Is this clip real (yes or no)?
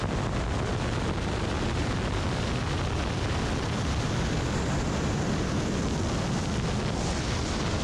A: yes